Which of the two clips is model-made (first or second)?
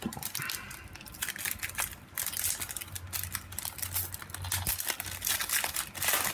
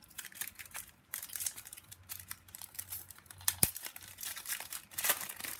second